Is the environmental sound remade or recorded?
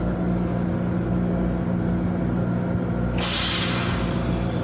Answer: recorded